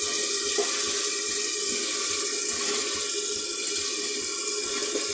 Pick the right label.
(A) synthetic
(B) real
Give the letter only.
B